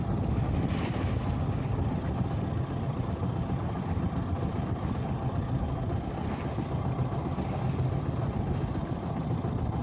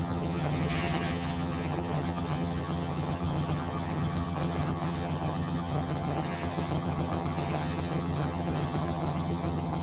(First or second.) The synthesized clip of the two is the second